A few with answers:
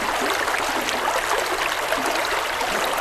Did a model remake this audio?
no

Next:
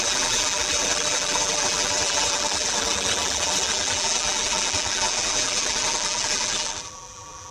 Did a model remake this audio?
yes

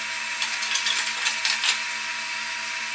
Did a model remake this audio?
no